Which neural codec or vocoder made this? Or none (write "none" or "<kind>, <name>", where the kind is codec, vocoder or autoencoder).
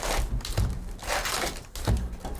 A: none